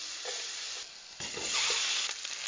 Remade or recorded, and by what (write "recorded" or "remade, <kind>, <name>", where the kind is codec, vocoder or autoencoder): recorded